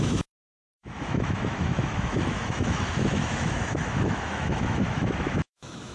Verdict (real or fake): fake